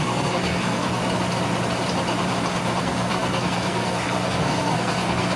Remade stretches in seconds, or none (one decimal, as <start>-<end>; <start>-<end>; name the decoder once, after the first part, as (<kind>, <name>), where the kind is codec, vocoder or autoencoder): 0.0-1.0 (codec, SNAC); 2.8-5.4